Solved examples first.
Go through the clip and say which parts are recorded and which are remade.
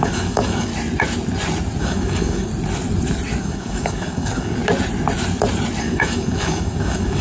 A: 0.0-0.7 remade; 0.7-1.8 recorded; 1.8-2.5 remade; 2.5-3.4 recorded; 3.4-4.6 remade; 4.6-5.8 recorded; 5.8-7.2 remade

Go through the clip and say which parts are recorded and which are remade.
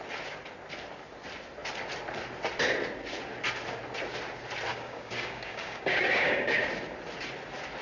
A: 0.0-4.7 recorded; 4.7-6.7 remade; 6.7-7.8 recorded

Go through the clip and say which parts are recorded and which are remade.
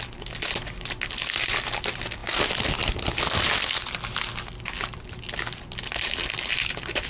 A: 0.0-7.1 recorded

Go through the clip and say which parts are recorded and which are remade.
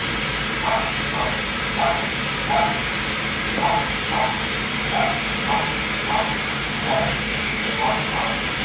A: 0.0-6.5 recorded; 6.5-7.9 remade; 7.9-8.6 recorded